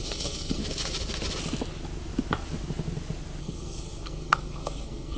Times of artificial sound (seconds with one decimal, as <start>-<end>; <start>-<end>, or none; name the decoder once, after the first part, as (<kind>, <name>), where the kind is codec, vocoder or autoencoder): 0.0-0.6 (codec, SNAC); 3.4-5.2